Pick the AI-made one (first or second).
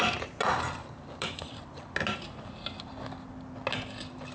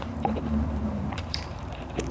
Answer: second